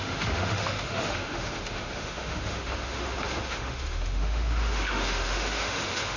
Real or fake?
fake